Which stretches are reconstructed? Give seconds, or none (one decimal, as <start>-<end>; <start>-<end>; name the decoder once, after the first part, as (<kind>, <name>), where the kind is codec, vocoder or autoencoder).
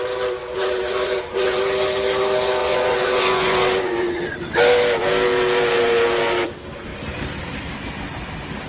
0.4-1.6 (vocoder, Vocos); 2.6-4.5